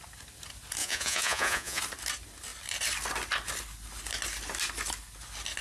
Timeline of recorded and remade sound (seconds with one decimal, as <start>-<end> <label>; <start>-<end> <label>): 0.0-0.8 recorded; 0.8-1.8 remade; 1.8-5.6 recorded